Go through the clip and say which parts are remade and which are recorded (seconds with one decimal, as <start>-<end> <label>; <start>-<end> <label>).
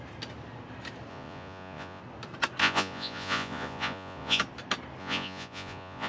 0.0-1.1 recorded; 1.1-2.0 remade; 2.0-2.6 recorded; 2.6-4.4 remade; 4.4-5.0 recorded; 5.0-6.1 remade